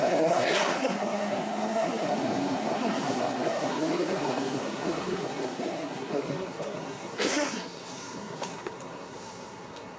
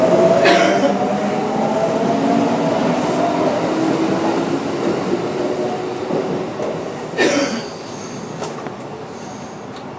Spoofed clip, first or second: first